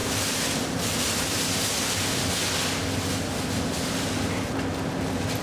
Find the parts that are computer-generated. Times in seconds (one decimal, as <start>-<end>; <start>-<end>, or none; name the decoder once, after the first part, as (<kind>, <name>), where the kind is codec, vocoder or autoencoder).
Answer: none